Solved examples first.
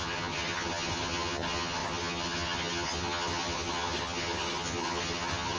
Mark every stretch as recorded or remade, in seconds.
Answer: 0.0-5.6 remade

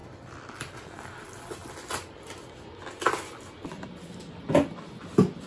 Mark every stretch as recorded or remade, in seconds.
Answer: 0.0-5.5 recorded